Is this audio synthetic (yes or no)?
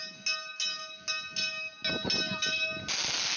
no